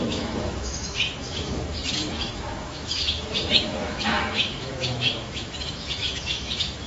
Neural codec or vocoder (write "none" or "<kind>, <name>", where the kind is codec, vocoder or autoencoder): autoencoder, DAC-VAE